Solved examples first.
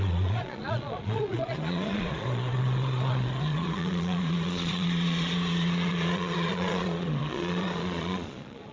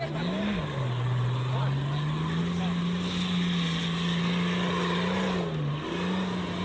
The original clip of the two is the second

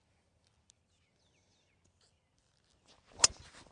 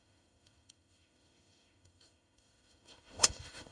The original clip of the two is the first